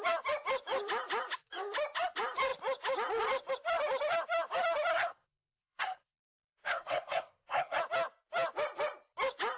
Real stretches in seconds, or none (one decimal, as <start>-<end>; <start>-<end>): 0.0-4.9; 7.8-9.6